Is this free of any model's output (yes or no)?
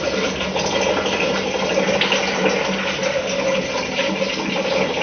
yes